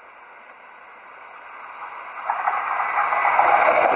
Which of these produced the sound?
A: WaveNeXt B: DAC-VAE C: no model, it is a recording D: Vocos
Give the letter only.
C